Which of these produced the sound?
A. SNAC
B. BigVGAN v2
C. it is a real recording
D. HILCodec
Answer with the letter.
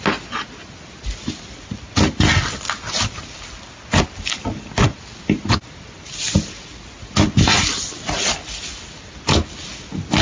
C